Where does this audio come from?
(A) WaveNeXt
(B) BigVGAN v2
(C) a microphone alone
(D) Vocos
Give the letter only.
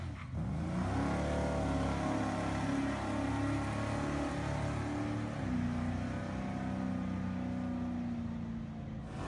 C